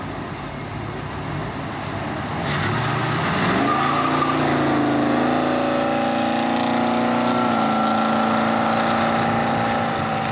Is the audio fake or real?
real